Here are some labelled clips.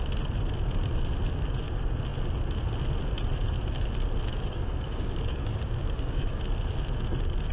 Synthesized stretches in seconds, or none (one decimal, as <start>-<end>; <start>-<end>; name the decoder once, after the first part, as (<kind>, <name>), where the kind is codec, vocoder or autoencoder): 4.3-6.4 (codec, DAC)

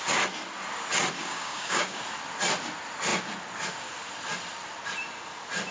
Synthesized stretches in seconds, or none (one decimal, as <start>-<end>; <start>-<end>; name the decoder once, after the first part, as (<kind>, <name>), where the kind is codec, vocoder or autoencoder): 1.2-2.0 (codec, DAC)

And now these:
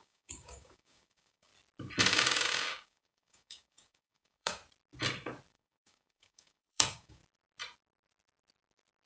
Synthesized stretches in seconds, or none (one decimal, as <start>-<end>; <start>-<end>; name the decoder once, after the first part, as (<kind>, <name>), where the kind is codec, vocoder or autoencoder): 0.0-1.5 (codec, DAC); 2.1-4.6; 5.5-7.2